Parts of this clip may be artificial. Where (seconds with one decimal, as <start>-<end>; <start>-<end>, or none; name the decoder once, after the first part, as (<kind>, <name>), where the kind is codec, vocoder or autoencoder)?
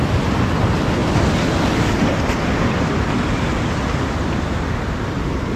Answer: none